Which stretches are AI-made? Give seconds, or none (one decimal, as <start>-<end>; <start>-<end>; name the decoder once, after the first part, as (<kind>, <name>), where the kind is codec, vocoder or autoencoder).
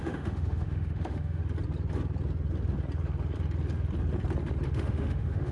0.0-1.4 (autoencoder, DAC-VAE); 4.7-5.5